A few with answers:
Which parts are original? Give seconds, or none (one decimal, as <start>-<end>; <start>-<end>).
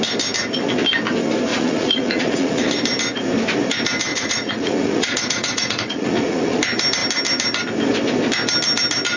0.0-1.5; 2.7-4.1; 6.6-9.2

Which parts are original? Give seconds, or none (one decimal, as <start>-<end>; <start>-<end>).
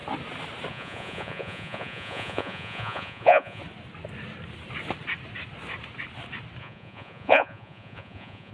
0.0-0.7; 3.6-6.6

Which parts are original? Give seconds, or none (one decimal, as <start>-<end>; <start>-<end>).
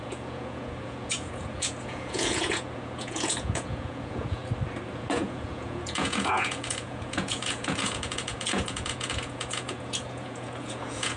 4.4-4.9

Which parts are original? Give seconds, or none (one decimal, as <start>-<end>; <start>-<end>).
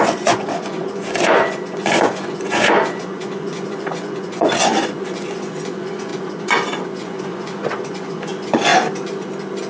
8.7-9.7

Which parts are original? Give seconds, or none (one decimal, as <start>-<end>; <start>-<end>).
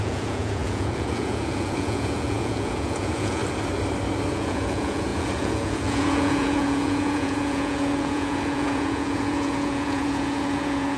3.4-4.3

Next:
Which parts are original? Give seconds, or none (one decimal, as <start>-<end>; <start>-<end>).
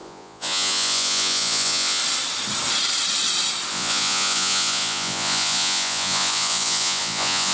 2.0-3.7